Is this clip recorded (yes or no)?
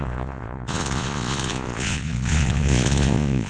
no